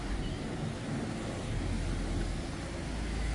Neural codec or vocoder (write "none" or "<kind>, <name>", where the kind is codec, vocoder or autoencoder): none